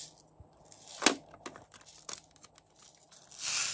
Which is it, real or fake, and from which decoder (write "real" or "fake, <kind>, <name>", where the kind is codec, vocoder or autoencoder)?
real